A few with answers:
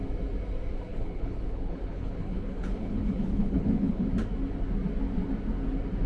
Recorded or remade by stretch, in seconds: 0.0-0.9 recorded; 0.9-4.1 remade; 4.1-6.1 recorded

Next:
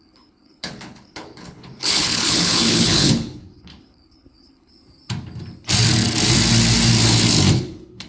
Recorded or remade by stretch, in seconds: 0.0-4.7 remade; 4.7-7.5 recorded; 7.5-8.1 remade

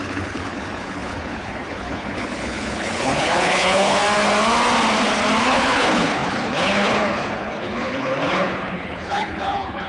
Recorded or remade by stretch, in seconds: 0.0-4.0 remade; 4.0-5.4 recorded; 5.4-9.9 remade

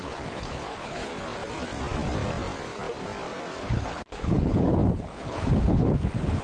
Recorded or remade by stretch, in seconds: 0.0-1.1 remade; 1.1-3.6 recorded; 3.6-6.4 remade

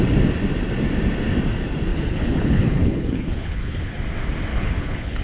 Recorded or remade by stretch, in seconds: 0.0-1.9 recorded; 1.9-3.9 remade; 3.9-4.5 recorded; 4.5-5.2 remade

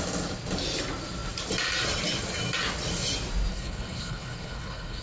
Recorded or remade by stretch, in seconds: 0.0-3.5 recorded; 3.5-5.0 remade

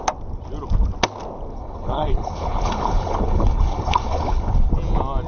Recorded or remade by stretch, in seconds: 0.0-1.5 recorded; 1.5-4.7 remade; 4.7-5.3 recorded